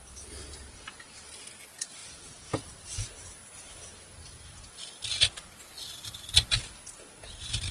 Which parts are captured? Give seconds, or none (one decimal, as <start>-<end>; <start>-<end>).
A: 0.0-7.7

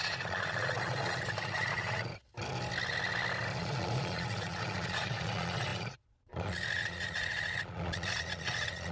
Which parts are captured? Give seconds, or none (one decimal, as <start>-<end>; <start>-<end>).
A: 2.1-3.6

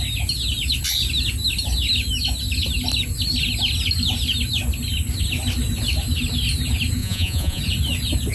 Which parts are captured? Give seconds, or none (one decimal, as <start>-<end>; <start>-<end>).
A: 0.0-7.0; 7.6-8.3

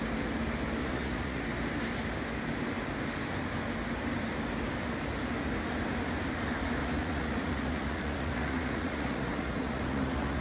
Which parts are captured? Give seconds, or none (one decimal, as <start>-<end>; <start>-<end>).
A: 0.0-0.8; 1.4-6.8

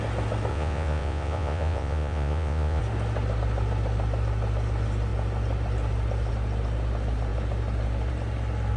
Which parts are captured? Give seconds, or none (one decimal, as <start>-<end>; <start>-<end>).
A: 0.0-0.5; 2.8-8.8

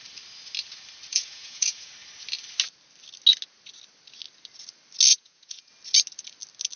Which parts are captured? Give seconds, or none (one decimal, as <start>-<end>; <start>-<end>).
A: 0.0-1.1; 1.9-5.1; 5.7-6.8

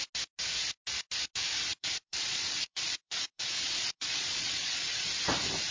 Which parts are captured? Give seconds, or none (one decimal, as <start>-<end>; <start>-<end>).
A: 0.0-1.7; 5.1-5.7